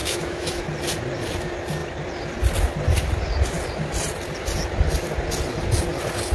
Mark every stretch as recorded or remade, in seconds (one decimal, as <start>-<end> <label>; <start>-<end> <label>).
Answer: 0.0-0.6 remade; 0.6-6.3 recorded